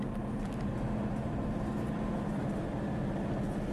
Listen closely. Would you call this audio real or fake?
real